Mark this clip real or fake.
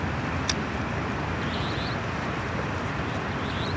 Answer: real